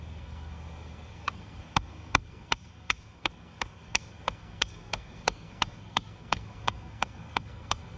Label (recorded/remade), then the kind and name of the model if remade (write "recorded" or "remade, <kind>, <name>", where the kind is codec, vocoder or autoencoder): remade, codec, SNAC